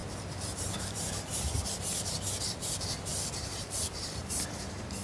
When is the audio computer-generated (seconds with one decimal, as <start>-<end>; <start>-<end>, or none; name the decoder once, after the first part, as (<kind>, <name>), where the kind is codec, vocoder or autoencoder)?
0.0-1.4 (vocoder, BigVGAN v2); 3.1-4.4